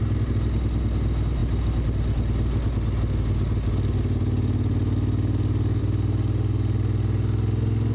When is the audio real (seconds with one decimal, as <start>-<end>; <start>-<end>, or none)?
0.0-7.9